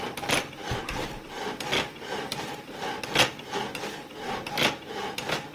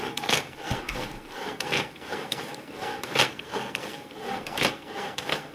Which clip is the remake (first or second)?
second